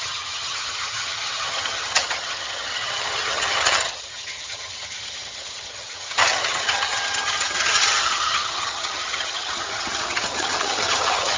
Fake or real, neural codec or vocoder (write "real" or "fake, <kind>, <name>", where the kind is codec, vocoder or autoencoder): fake, vocoder, HiFi-GAN